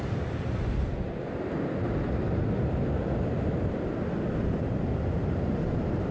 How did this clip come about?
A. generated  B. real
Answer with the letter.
B